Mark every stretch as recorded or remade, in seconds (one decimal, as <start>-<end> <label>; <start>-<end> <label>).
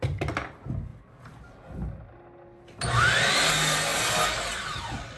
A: 0.0-5.2 recorded